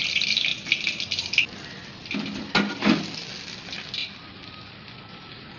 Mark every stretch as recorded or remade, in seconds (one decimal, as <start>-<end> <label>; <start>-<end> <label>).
0.0-5.6 recorded